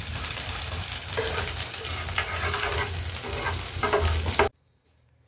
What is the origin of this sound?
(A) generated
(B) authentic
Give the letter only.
B